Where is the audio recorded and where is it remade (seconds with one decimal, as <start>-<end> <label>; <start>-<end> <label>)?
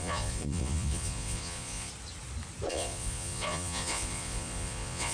0.0-1.9 remade; 1.9-2.7 recorded; 2.7-5.1 remade